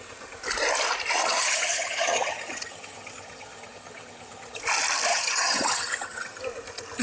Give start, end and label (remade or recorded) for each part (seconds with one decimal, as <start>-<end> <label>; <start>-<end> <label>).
0.0-1.2 recorded; 1.2-4.6 remade; 4.6-5.1 recorded; 5.1-6.4 remade; 6.4-7.0 recorded